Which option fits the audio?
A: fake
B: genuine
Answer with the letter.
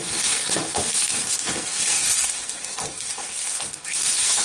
A